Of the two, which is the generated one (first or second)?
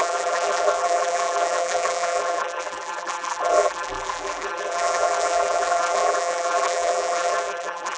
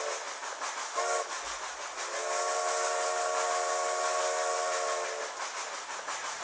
first